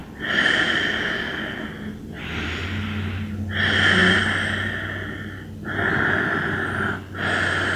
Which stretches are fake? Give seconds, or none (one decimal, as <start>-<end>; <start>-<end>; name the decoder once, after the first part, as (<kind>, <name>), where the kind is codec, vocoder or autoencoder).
none

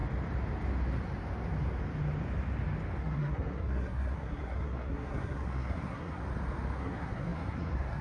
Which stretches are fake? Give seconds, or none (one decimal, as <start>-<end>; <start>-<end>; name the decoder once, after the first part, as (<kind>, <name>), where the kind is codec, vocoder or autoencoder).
3.0-6.2 (codec, SNAC); 6.8-8.0

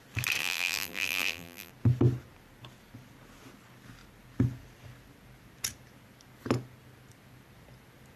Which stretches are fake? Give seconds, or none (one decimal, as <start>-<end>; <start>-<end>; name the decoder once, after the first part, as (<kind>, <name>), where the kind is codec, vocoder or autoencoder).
0.4-1.7 (vocoder, BigVGAN v2)

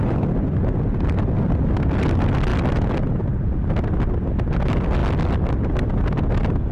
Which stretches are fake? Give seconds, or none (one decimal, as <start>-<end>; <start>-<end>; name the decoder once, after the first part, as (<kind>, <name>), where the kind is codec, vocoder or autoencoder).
none

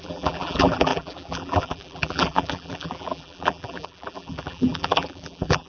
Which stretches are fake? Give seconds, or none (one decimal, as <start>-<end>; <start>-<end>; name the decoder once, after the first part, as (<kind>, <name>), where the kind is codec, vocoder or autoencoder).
0.0-5.7 (vocoder, BigVGAN v2)